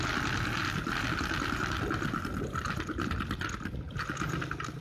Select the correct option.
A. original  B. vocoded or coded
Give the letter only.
A